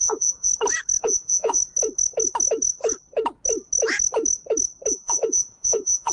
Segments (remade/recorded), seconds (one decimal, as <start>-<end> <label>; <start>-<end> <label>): 0.0-0.5 remade; 0.5-1.0 recorded; 1.0-1.6 remade; 1.6-4.9 recorded; 4.9-6.1 remade